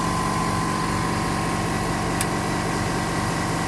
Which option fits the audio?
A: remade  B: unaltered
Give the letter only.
B